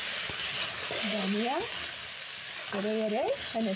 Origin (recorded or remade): recorded